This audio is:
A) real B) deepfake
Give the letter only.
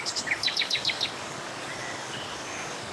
B